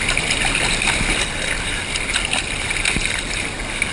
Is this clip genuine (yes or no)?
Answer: yes